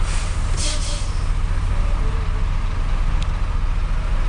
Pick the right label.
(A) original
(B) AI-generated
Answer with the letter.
A